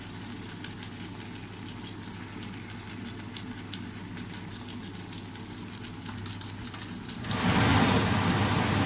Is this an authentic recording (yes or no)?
yes